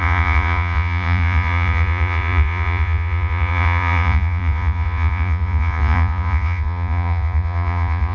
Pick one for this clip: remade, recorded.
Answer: remade